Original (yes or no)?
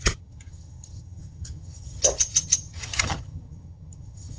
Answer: no